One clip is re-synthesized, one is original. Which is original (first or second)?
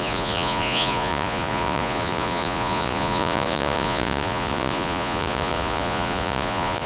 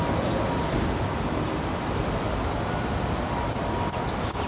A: second